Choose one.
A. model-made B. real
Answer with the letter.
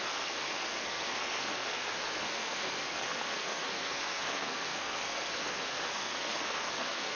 A